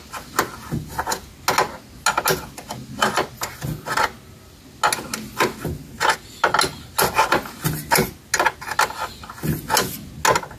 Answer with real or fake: real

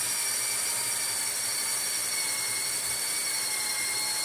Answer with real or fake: real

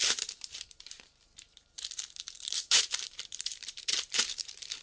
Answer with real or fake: fake